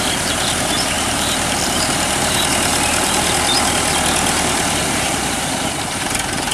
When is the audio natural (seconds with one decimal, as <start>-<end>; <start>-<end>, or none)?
2.2-4.8